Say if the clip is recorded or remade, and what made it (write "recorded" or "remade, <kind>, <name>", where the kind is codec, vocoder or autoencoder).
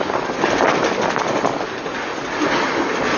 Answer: recorded